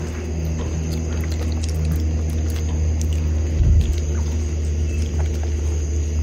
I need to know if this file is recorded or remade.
recorded